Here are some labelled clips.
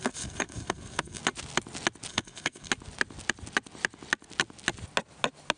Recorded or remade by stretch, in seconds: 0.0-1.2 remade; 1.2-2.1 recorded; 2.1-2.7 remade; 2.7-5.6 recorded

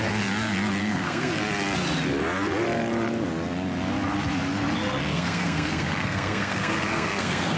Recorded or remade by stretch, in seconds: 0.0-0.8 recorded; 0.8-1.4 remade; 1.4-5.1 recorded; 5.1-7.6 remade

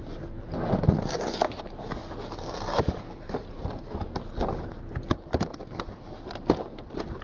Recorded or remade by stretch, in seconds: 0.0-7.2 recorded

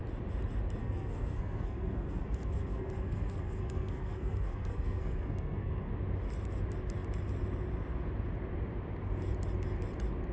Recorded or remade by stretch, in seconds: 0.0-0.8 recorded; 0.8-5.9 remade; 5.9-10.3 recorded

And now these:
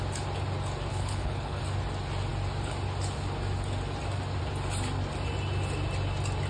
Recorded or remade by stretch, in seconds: 0.0-0.9 recorded; 0.9-1.6 remade; 1.6-6.5 recorded

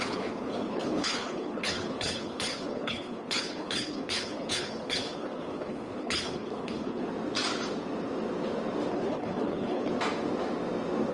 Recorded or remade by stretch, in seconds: 0.0-7.1 remade; 7.1-8.9 recorded; 8.9-9.9 remade; 9.9-11.1 recorded

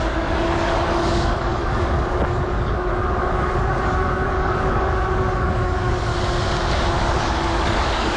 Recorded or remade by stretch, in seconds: 0.0-6.1 remade; 6.1-6.9 recorded; 6.9-8.2 remade

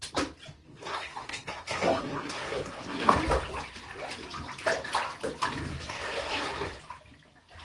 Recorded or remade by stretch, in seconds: 0.0-0.7 recorded; 0.7-3.2 remade; 3.2-5.7 recorded; 5.7-6.8 remade; 6.8-7.6 recorded